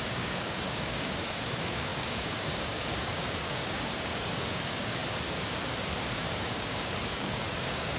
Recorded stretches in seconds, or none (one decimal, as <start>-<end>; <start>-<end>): 5.0-6.1